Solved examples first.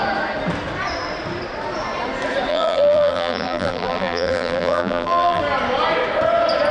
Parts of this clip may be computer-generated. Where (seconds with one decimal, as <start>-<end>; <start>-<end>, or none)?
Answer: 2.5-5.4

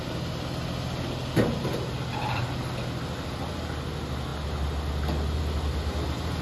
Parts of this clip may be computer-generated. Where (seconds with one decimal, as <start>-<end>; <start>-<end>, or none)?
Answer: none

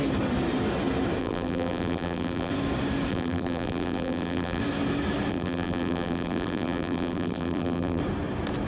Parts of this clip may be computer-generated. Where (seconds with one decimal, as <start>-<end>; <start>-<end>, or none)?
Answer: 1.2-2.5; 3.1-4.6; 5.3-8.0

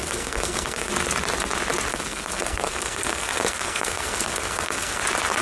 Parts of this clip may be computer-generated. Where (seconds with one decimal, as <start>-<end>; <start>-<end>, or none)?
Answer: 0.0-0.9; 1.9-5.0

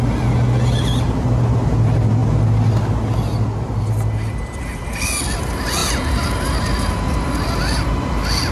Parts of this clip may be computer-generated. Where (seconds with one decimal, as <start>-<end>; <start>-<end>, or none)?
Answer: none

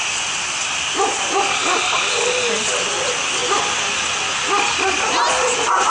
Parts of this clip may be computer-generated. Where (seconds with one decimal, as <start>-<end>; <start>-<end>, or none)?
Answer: none

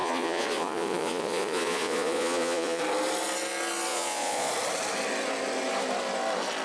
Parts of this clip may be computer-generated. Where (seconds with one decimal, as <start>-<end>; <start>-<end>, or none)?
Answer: 0.0-2.8; 3.9-4.5

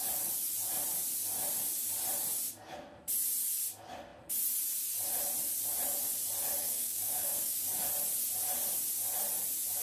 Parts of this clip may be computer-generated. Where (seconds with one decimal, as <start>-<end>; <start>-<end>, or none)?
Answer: 6.6-7.6